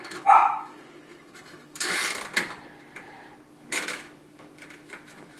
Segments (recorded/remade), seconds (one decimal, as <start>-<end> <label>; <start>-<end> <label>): 0.0-2.0 remade; 2.0-3.5 recorded; 3.5-5.4 remade